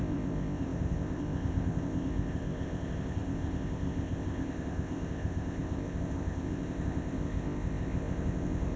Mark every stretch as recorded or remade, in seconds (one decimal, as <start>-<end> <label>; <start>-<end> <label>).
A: 0.0-8.8 remade